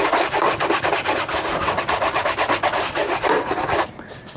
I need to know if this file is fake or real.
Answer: real